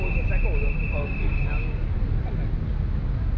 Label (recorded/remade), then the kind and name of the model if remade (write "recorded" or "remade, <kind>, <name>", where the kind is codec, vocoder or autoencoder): recorded